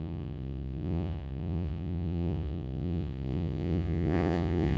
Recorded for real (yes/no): no